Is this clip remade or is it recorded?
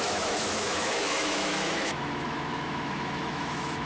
remade